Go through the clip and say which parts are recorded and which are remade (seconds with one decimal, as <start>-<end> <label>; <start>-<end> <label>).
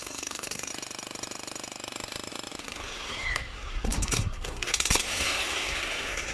0.0-0.7 remade; 0.7-2.6 recorded; 2.6-6.3 remade